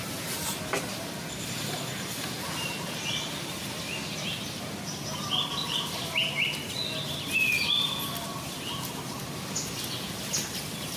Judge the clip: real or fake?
real